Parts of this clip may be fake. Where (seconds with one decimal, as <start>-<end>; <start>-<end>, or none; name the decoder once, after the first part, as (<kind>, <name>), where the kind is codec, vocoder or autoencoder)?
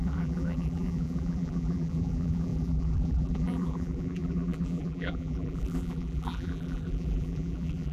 0.0-7.9 (vocoder, BigVGAN v2)